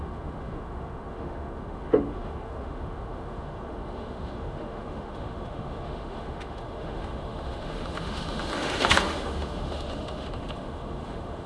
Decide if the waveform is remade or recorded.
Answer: remade